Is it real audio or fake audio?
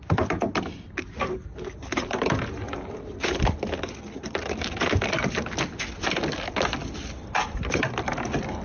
real